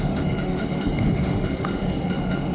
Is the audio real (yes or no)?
no